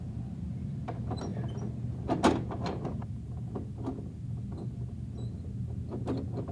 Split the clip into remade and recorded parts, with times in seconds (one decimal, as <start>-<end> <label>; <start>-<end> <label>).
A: 0.0-6.5 recorded